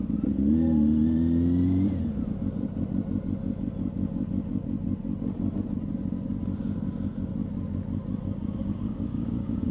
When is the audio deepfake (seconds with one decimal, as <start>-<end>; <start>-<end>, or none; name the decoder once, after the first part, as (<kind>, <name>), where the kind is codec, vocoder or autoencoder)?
8.6-9.7 (codec, DAC)